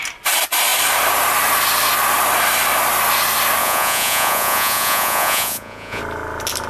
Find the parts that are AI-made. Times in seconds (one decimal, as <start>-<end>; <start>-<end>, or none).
3.6-6.0